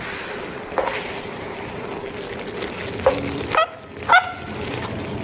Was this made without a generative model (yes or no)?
yes